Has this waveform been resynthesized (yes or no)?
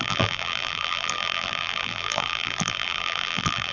yes